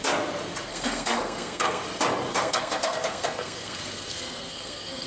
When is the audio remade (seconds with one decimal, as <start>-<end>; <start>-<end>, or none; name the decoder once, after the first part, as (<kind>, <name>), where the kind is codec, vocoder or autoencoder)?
0.7-1.8 (codec, SNAC); 2.3-5.1